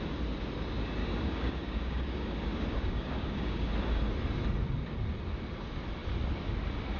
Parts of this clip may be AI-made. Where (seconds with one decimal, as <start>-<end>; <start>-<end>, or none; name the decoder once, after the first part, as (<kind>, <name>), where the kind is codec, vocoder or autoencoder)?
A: 1.0-3.7 (codec, DAC)